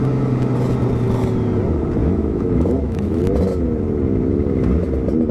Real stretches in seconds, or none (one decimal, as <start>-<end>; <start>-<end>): 0.0-2.0; 3.2-5.3